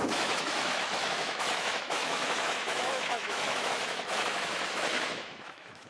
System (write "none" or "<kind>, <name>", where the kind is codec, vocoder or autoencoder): autoencoder, DAC-VAE